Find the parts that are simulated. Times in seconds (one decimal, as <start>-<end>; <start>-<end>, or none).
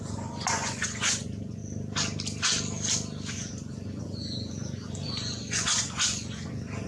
0.0-1.6; 3.3-6.9